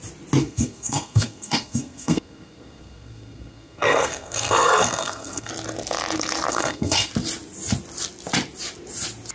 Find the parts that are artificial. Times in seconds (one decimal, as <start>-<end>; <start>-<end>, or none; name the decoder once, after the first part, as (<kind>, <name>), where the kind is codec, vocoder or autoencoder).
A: 0.4-5.5 (codec, SNAC); 6.5-7.1